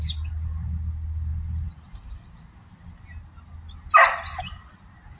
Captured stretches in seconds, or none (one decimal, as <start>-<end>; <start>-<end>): 0.0-5.2